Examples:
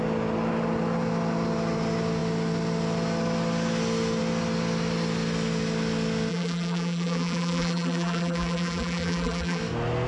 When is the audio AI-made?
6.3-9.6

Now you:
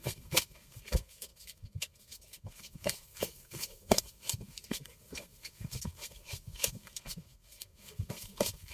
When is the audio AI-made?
0.0-8.7